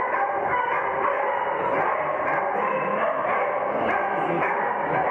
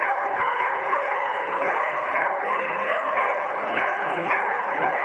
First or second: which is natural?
first